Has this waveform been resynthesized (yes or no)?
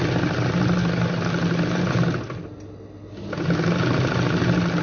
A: no